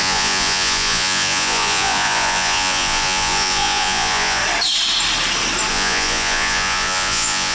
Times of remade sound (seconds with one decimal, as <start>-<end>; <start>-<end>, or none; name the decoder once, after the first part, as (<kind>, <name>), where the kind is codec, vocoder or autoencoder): 0.0-4.4 (vocoder, Vocos); 5.7-7.5